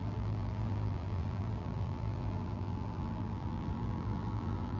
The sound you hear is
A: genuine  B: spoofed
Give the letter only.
B